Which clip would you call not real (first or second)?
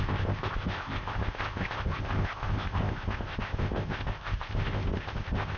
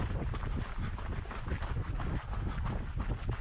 first